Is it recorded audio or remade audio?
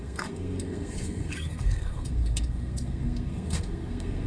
remade